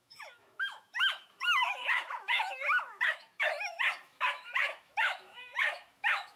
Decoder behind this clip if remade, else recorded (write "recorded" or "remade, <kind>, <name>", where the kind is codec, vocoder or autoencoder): remade, autoencoder, DAC-VAE